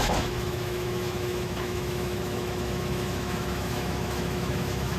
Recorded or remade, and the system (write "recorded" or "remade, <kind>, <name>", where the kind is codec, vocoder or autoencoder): remade, autoencoder, DAC-VAE